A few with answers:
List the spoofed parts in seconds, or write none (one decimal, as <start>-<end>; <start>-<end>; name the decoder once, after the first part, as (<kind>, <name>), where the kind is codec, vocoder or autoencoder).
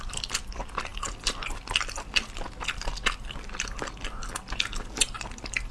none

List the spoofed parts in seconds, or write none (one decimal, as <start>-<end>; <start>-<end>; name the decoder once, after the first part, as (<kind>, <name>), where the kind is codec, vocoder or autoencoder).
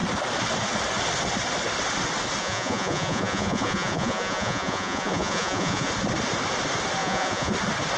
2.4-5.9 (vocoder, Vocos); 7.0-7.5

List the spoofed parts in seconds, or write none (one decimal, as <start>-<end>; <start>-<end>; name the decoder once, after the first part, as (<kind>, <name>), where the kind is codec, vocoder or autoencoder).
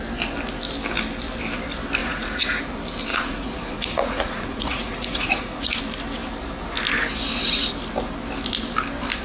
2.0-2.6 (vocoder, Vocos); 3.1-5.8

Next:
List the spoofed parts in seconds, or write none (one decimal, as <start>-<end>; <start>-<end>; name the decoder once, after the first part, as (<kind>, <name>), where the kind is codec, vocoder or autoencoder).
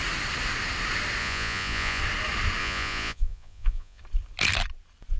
1.2-2.0 (vocoder, Vocos); 2.6-4.0